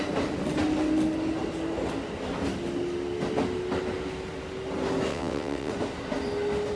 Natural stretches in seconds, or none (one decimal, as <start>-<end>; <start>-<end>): 0.0-5.1; 5.7-6.8